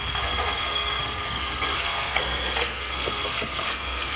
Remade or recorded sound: remade